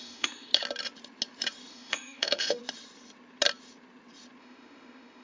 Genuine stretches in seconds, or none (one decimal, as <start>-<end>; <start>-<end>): 0.5-1.7; 2.6-4.4